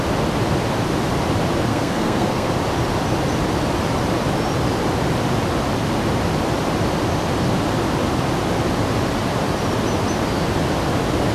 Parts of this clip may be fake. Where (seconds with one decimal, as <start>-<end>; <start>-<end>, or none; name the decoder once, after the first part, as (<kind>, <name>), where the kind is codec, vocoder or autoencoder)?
1.7-2.5 (codec, SNAC)